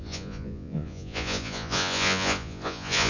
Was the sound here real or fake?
fake